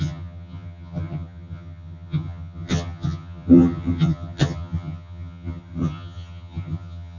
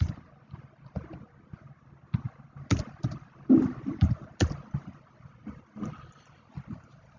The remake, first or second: first